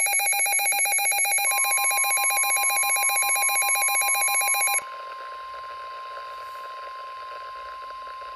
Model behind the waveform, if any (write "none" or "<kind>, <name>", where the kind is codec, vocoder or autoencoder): none